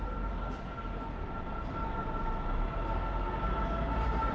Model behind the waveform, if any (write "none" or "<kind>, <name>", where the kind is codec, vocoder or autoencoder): none